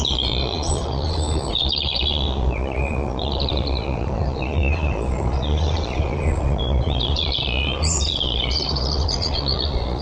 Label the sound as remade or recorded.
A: remade